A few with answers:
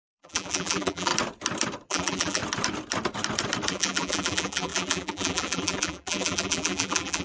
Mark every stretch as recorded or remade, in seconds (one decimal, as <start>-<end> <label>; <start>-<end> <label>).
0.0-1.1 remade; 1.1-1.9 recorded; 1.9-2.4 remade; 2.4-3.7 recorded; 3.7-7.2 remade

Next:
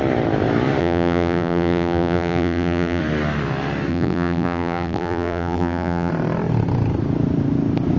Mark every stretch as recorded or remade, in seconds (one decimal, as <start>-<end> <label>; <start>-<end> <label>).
0.0-0.8 recorded; 0.8-3.0 remade; 3.0-3.9 recorded; 3.9-6.1 remade; 6.1-8.0 recorded

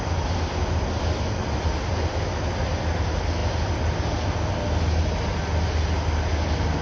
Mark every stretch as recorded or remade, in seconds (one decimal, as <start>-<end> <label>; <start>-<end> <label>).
0.0-6.8 recorded

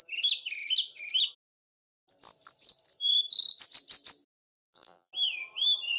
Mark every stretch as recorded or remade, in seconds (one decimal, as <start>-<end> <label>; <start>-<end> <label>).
0.0-4.5 recorded; 4.5-5.1 remade; 5.1-6.0 recorded

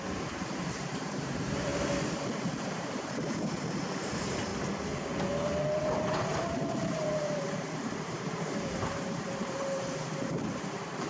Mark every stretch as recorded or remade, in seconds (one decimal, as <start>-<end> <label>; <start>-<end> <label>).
0.0-1.7 remade; 1.7-2.6 recorded; 2.6-4.5 remade; 4.5-5.8 recorded; 5.8-11.1 remade

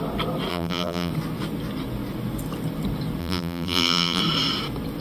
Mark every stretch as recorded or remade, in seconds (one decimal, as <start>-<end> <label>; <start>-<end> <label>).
0.0-0.5 recorded; 0.5-1.1 remade; 1.1-3.2 recorded; 3.2-4.2 remade; 4.2-5.0 recorded